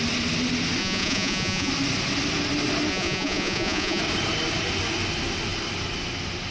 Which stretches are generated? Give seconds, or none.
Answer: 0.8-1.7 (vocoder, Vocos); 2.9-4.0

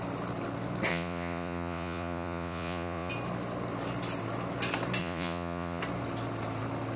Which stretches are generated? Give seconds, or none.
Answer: 0.9-3.1 (vocoder, Vocos); 5.0-5.8

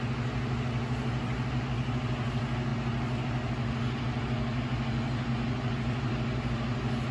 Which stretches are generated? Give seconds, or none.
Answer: none

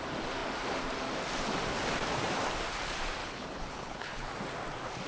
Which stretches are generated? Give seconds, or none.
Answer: 3.2-4.3 (codec, HILCodec)

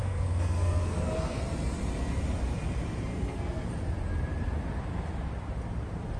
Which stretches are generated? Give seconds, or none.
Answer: 0.0-1.4 (codec, SNAC); 3.1-3.7

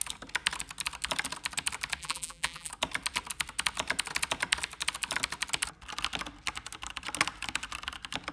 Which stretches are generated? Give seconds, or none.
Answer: 2.0-2.7 (vocoder, BigVGAN v2)

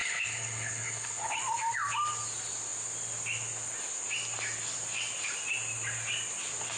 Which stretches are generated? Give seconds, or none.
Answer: 0.0-1.4 (codec, HILCodec)

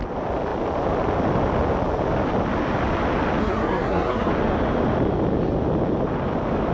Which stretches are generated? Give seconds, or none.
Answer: 3.4-4.3 (codec, SNAC)